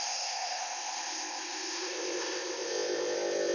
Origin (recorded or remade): remade